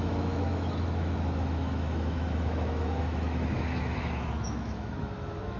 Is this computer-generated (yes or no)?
yes